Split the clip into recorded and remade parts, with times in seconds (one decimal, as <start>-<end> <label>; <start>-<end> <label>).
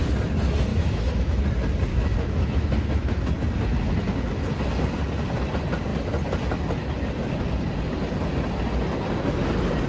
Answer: 0.0-0.7 recorded; 0.7-1.4 remade; 1.4-1.9 recorded; 1.9-3.3 remade; 3.3-9.9 recorded